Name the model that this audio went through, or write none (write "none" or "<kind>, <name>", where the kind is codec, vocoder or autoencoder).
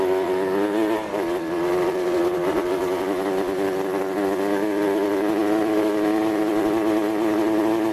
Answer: none